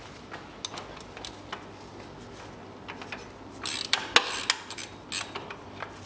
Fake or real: real